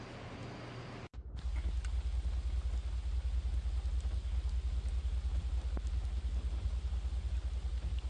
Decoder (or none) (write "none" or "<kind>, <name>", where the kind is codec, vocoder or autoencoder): none